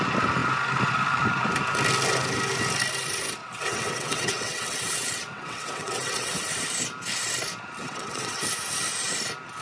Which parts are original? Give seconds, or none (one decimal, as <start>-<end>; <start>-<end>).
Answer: 0.0-3.4; 6.5-7.8; 8.4-9.6